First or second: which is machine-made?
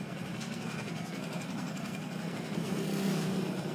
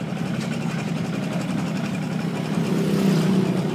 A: first